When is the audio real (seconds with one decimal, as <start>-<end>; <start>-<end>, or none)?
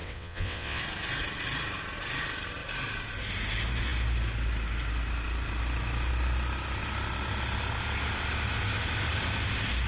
0.8-9.9